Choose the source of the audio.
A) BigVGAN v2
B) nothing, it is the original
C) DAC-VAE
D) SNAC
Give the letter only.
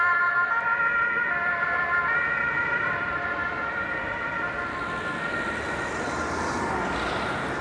A